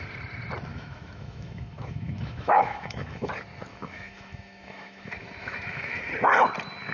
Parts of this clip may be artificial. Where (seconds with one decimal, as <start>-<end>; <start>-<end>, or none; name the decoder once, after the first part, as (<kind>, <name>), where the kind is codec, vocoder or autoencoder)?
0.7-3.3 (autoencoder, DAC-VAE); 3.7-6.1